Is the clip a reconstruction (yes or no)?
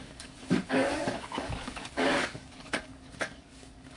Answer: yes